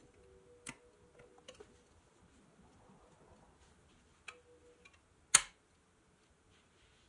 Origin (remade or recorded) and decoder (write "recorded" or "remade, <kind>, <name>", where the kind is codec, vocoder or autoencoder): recorded